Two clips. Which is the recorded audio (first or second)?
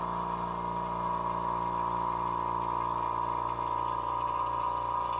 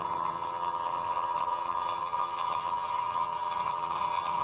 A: first